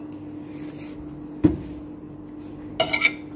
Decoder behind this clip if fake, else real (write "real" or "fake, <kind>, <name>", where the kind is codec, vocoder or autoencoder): real